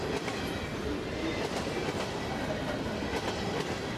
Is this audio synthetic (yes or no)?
no